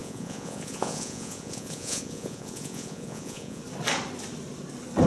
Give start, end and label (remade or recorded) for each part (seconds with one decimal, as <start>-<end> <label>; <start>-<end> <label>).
0.0-3.6 remade; 3.6-5.1 recorded